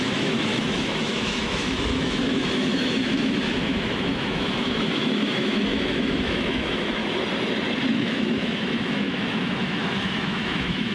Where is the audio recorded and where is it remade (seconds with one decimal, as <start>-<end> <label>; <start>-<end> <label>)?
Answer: 0.0-7.0 remade; 7.0-7.9 recorded; 7.9-10.9 remade